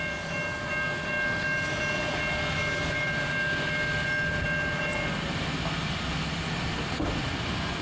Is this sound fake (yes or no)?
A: no